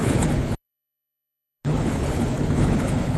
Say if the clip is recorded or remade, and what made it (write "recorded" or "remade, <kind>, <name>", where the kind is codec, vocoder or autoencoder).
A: remade, codec, HILCodec